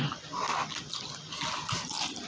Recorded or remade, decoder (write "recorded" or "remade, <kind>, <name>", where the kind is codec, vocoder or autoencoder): recorded